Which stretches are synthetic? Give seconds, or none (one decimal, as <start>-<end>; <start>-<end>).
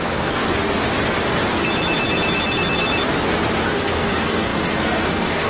0.0-0.4; 3.7-5.5